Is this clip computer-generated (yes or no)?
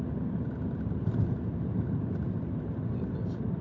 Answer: no